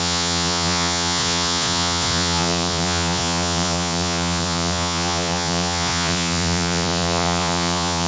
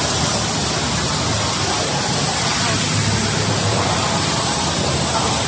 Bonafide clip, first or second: second